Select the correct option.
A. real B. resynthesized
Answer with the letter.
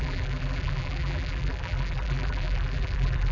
B